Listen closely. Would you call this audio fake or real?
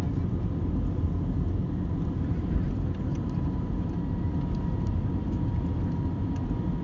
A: real